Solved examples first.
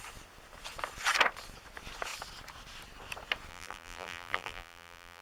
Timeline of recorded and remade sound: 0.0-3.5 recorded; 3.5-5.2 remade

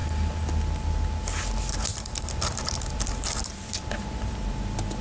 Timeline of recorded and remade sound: 0.0-5.0 recorded

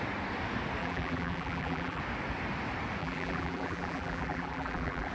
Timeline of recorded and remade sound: 0.0-0.8 recorded; 0.8-2.0 remade; 2.0-3.0 recorded; 3.0-5.1 remade

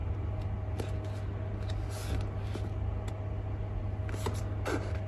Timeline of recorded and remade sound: 0.0-5.1 recorded

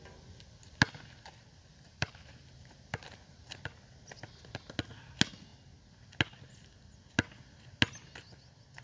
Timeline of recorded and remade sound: 0.0-1.7 recorded; 1.7-3.0 remade; 3.0-8.8 recorded

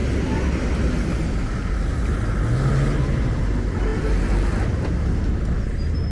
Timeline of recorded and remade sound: 0.0-3.9 recorded; 3.9-4.5 remade; 4.5-6.1 recorded